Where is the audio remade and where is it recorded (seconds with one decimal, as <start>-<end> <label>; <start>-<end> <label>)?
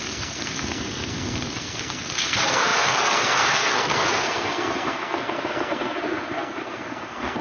0.0-7.4 remade